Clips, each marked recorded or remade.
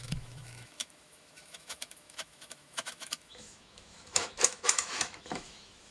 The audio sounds remade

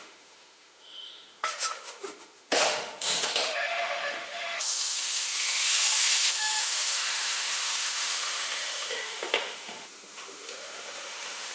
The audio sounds remade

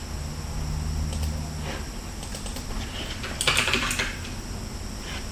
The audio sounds recorded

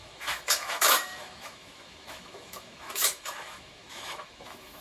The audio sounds remade